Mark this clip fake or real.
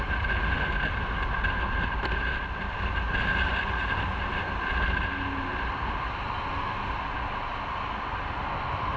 real